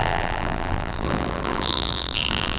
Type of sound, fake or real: fake